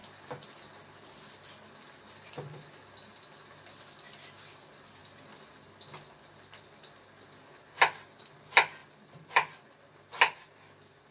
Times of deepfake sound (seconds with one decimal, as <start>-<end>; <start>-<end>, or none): none